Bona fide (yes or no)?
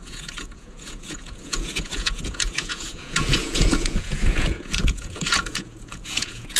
no